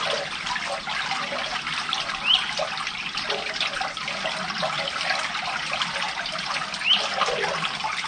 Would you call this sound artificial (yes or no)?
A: no